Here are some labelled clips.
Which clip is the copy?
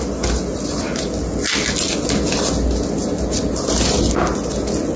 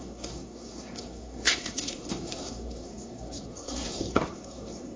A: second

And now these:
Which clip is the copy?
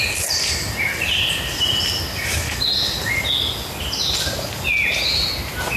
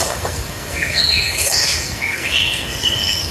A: second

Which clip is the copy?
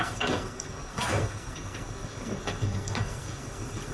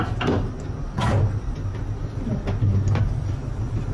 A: first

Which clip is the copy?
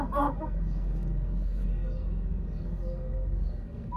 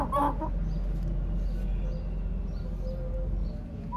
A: first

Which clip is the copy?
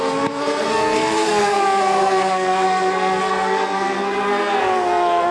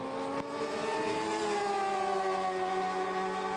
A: first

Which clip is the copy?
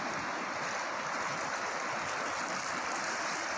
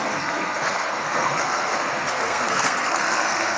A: second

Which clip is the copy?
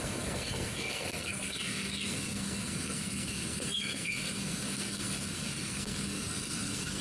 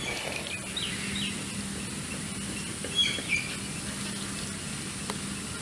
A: first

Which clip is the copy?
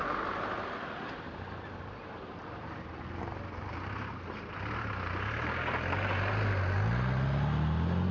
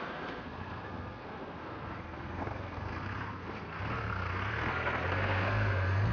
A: second